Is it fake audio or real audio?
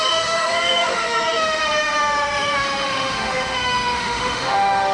fake